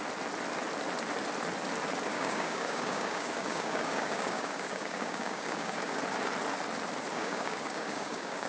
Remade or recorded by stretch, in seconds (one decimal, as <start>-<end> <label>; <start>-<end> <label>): 0.0-2.1 recorded; 2.1-6.0 remade; 6.0-7.1 recorded; 7.1-8.5 remade

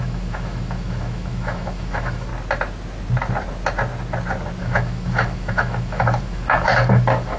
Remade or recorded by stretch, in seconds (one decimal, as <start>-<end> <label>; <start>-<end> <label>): 0.0-2.3 remade; 2.3-4.6 recorded; 4.6-7.4 remade

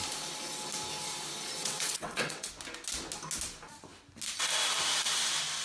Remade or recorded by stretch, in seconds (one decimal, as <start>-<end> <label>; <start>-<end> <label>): 0.0-1.6 recorded; 1.6-2.5 remade; 2.5-5.6 recorded

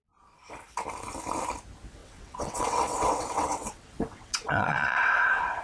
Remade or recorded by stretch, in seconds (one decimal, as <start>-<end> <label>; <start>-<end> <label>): 0.0-2.0 recorded; 2.0-5.6 remade

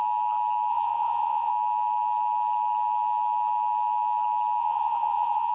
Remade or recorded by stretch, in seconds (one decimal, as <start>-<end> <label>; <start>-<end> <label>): 0.0-0.7 recorded; 0.7-1.5 remade; 1.5-4.6 recorded; 4.6-5.5 remade